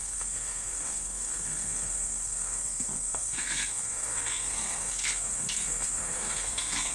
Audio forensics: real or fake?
fake